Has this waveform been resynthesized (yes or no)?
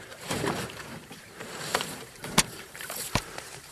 yes